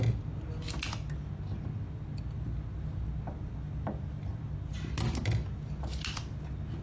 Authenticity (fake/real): real